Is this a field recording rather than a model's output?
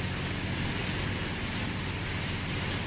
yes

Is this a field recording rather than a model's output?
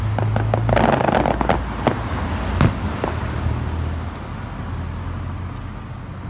yes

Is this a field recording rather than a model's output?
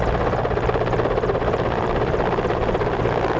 yes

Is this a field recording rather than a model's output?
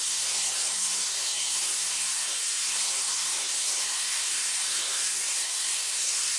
no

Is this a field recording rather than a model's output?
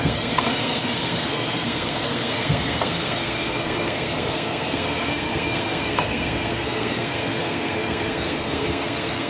no